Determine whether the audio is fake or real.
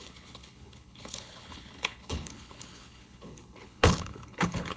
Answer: fake